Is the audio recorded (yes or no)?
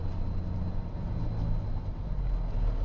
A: yes